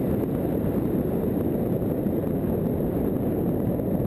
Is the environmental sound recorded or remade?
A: remade